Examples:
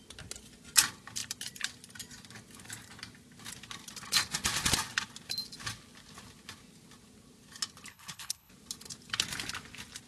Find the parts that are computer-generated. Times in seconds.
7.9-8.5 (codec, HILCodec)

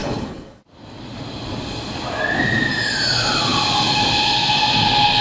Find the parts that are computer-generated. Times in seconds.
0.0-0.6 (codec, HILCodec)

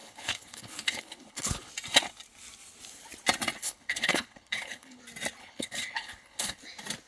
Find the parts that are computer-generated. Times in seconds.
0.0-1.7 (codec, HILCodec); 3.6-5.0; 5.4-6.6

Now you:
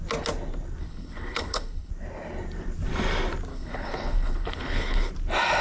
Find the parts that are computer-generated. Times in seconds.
0.8-1.9 (codec, HILCodec); 3.5-5.1

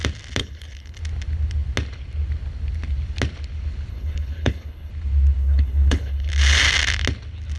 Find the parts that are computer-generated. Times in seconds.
0.4-1.0 (codec, HILCodec); 3.9-4.9; 5.4-6.3

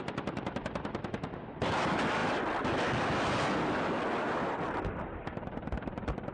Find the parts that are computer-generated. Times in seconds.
none

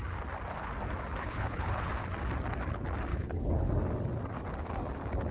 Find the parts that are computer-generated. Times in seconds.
1.2-1.9 (codec, HILCodec); 3.1-3.7

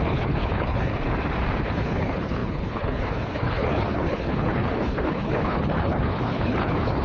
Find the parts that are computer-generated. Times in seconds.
0.0-0.9 (codec, HILCodec); 1.6-7.0